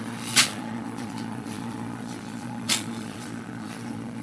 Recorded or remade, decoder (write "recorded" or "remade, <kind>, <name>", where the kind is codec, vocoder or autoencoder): remade, vocoder, Vocos